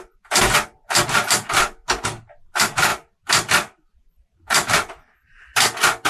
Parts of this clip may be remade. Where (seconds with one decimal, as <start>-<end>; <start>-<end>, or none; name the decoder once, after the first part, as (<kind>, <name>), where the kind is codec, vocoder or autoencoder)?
none

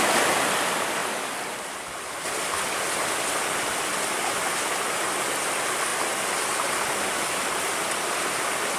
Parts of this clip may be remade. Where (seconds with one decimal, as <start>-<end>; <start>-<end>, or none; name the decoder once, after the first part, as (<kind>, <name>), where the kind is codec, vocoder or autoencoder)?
none

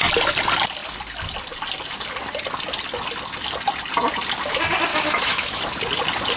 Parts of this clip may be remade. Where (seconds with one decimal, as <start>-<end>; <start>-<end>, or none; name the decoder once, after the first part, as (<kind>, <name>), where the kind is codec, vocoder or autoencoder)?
4.9-5.6 (autoencoder, DAC-VAE)

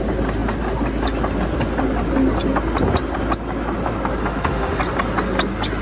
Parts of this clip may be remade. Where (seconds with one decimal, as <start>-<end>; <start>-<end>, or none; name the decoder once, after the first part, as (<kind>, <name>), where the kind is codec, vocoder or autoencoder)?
4.2-4.8 (autoencoder, DAC-VAE)

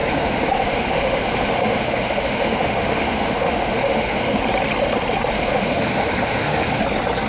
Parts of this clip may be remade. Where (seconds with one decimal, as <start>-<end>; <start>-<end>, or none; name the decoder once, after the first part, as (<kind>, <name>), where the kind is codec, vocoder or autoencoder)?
0.0-4.4 (autoencoder, DAC-VAE); 5.3-6.8

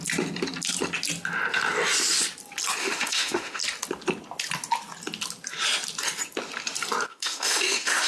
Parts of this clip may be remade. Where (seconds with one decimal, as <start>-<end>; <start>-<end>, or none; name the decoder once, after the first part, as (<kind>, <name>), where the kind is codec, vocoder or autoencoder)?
2.8-3.6 (autoencoder, DAC-VAE); 7.1-8.1

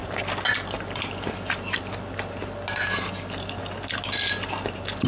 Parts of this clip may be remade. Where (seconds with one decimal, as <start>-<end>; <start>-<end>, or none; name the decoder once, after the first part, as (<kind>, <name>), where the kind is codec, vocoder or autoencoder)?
none

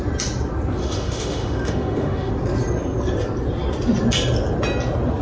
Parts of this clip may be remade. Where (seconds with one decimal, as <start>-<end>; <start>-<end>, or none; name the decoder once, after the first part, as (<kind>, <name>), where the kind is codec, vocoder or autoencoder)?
0.8-2.3 (autoencoder, DAC-VAE)